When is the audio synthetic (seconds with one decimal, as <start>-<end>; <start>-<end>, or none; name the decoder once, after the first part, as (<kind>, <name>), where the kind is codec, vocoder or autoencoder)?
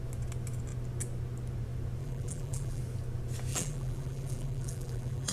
2.0-2.8 (vocoder, BigVGAN v2); 3.5-5.3